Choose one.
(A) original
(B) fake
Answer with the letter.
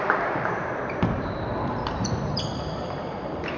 B